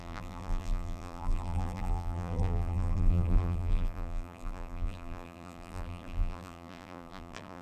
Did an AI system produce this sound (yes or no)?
yes